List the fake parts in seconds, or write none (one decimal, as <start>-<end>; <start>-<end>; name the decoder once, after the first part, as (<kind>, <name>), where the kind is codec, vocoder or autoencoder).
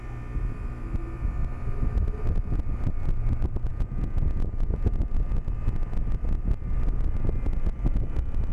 3.7-4.9 (vocoder, Vocos)